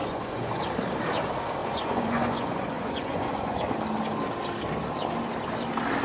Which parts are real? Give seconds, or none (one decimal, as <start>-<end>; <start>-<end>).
0.6-1.6; 3.6-6.0